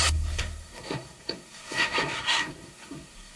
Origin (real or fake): fake